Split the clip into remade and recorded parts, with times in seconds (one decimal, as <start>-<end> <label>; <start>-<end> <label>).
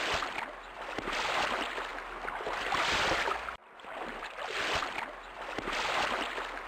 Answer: 0.0-6.7 recorded